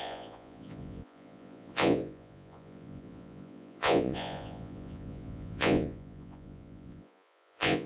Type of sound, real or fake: fake